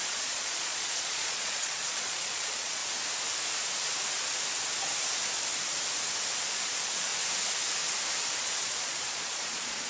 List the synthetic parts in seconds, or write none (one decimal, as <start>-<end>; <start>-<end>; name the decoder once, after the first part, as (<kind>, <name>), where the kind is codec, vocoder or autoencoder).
0.0-2.8 (vocoder, Vocos); 6.4-7.1; 8.4-9.9